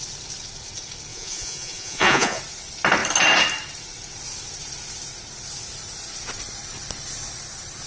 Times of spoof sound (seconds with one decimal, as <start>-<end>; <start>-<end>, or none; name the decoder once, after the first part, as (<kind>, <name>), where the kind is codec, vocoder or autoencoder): 1.1-2.4 (vocoder, Vocos)